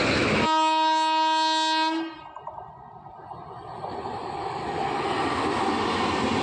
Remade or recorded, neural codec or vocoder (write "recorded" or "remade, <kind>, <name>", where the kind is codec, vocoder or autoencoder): recorded